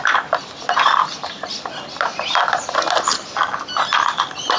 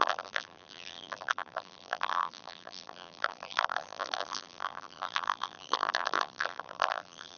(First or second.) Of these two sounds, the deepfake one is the second